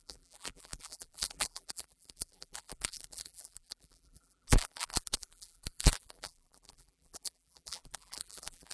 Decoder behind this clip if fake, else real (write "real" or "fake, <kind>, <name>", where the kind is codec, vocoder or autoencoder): fake, vocoder, BigVGAN v2